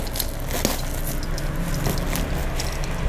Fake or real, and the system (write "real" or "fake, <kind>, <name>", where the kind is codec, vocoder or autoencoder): real